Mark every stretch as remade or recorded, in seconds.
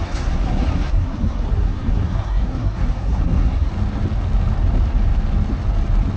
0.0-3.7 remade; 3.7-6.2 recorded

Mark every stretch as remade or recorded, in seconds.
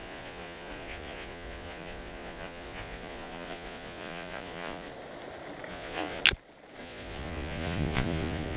0.0-4.9 remade; 4.9-5.7 recorded; 5.7-6.2 remade; 6.2-6.8 recorded; 6.8-8.6 remade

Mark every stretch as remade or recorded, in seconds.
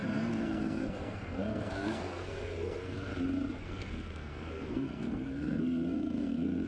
0.0-3.1 remade; 3.1-3.6 recorded; 3.6-6.7 remade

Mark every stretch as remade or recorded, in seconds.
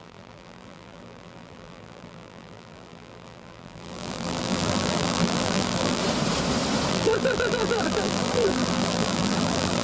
0.0-6.0 remade; 6.0-6.9 recorded; 6.9-9.8 remade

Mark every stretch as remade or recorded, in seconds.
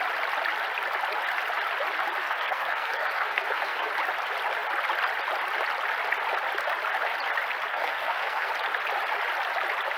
0.0-2.2 recorded; 2.2-3.9 remade; 3.9-7.7 recorded; 7.7-8.5 remade; 8.5-10.0 recorded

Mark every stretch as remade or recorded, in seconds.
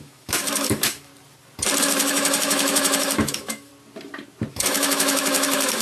0.0-1.1 remade; 1.1-1.8 recorded; 1.8-3.7 remade; 3.7-4.5 recorded; 4.5-5.8 remade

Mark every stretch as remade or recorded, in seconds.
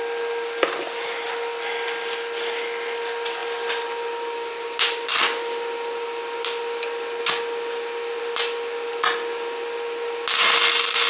0.0-11.1 recorded